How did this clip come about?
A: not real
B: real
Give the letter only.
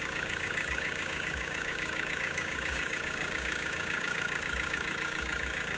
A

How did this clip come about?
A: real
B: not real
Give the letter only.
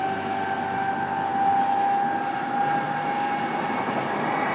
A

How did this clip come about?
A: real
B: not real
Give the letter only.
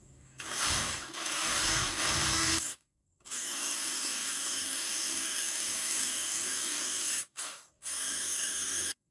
B